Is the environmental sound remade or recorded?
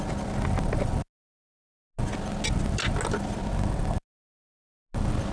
recorded